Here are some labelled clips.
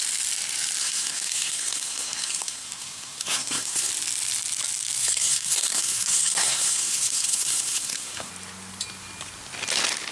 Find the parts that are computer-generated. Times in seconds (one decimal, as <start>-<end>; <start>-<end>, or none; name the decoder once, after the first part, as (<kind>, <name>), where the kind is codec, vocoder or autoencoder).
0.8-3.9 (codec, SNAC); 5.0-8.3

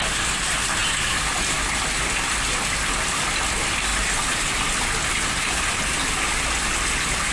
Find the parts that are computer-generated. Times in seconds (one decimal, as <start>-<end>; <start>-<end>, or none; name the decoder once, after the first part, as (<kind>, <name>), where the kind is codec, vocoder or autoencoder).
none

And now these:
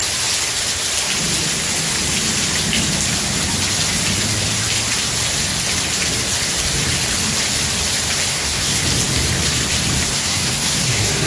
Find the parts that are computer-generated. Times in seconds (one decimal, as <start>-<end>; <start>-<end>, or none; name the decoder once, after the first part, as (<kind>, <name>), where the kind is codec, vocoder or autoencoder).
8.3-8.8 (codec, SNAC); 10.1-11.3